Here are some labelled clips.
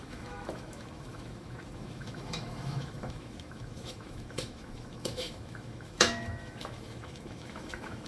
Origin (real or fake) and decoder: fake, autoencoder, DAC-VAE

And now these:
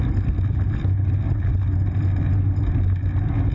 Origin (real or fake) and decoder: real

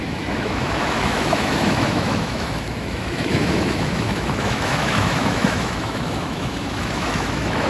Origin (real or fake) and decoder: fake, autoencoder, DAC-VAE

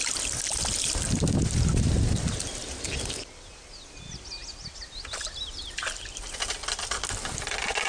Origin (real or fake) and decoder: real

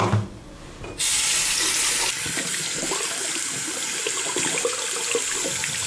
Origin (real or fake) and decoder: real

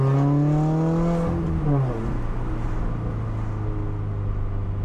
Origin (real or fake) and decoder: real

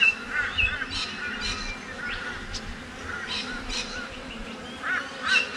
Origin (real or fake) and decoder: real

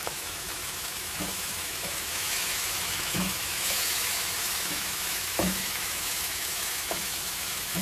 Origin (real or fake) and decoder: fake, autoencoder, DAC-VAE